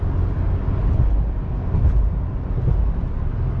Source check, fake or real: real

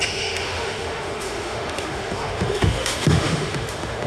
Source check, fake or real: fake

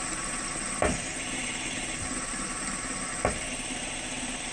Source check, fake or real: real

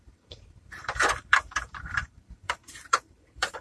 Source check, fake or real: fake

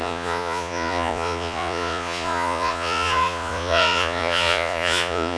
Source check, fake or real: fake